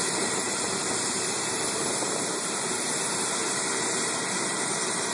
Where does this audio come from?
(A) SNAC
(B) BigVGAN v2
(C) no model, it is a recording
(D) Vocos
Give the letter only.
B